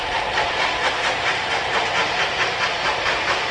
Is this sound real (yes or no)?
yes